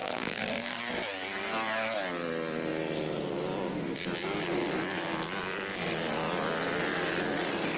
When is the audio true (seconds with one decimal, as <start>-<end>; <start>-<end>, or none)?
0.8-7.8